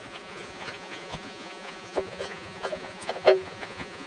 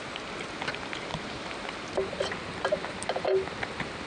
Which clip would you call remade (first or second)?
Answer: first